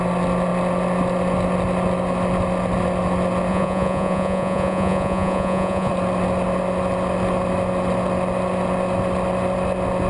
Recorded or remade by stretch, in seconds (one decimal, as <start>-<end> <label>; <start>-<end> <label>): 0.0-3.5 recorded; 3.5-5.9 remade; 5.9-10.1 recorded